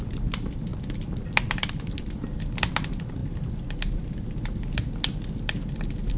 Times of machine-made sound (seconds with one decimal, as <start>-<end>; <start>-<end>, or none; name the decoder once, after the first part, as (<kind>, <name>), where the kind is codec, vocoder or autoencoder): none

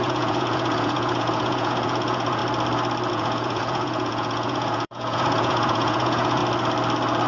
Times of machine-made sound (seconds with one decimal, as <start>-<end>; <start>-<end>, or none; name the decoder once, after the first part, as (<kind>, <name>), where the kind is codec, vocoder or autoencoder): 0.0-2.4 (vocoder, Vocos); 3.1-6.4